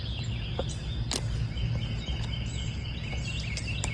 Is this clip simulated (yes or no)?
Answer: no